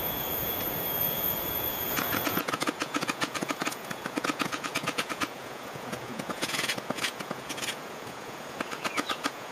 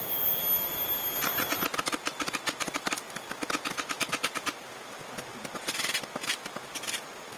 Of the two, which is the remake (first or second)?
first